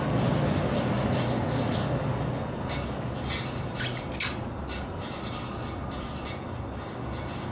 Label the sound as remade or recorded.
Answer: recorded